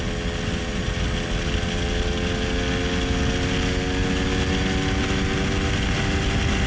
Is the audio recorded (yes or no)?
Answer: yes